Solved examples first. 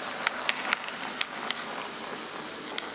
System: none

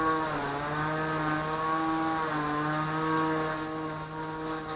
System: none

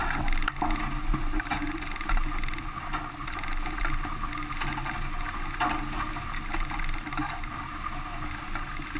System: none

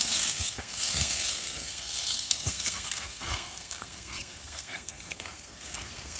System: codec, SNAC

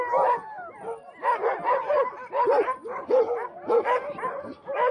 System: none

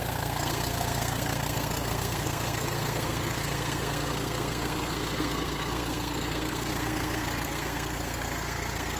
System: codec, SNAC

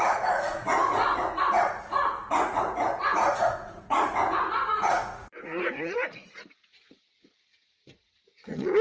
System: vocoder, Vocos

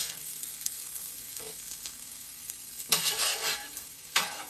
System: codec, SNAC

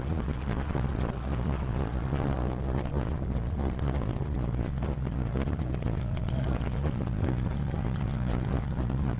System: vocoder, Vocos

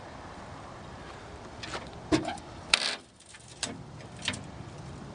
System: vocoder, BigVGAN v2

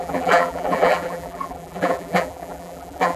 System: vocoder, BigVGAN v2